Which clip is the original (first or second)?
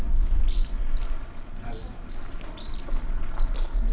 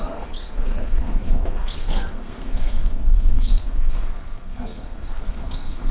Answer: first